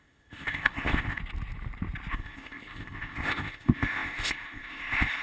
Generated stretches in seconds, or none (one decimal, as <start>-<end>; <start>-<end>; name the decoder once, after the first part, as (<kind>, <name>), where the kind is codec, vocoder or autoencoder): 0.0-1.2 (codec, ZipCodec); 2.1-5.2